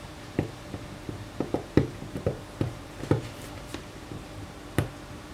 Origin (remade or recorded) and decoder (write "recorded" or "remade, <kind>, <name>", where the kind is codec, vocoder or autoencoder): remade, vocoder, BigVGAN v2